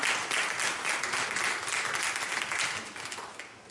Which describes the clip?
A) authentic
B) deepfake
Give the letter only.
A